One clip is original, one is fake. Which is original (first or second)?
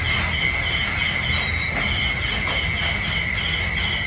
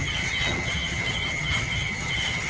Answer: first